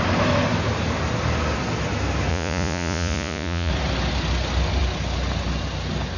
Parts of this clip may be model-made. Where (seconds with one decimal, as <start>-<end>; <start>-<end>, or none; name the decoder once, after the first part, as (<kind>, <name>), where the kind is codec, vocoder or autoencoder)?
2.3-3.7 (vocoder, Vocos)